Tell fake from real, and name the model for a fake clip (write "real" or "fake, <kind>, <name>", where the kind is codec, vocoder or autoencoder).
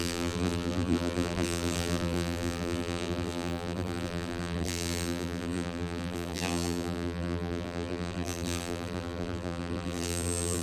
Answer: fake, vocoder, BigVGAN v2